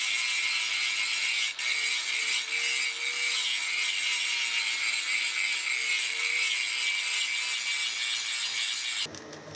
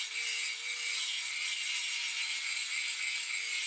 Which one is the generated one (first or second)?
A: second